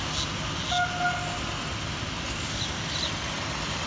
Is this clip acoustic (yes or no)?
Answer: yes